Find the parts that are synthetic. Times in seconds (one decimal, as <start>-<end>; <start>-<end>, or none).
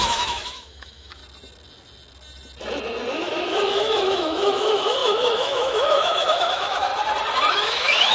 0.0-1.2; 3.1-6.9; 7.5-8.1